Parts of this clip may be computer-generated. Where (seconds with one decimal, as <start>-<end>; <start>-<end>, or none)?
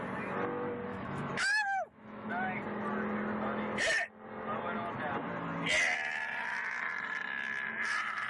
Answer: 0.9-2.3